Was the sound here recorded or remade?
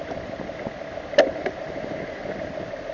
recorded